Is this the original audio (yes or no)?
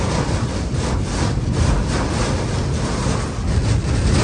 yes